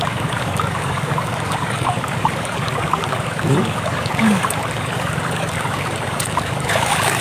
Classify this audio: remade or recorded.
remade